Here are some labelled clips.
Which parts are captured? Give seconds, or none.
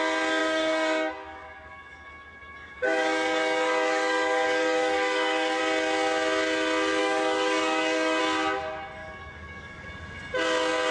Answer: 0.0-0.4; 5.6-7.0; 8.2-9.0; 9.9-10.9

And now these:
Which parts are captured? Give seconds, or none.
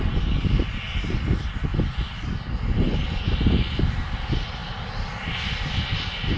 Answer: 0.0-6.4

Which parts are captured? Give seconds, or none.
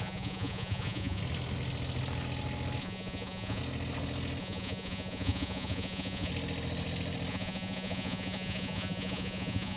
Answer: 1.2-2.8; 3.6-4.4; 6.3-7.3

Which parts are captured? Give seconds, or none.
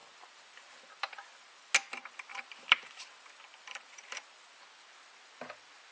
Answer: 1.7-2.3; 4.5-5.9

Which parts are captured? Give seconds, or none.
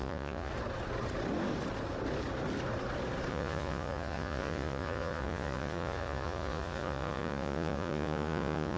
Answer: 0.5-3.3